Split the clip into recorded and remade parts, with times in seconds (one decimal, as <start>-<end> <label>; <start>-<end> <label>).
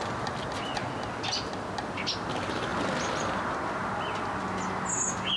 0.0-5.4 recorded